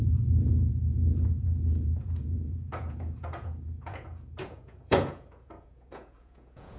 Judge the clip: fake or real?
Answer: fake